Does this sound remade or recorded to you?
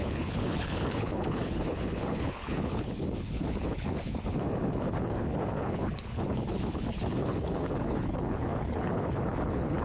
remade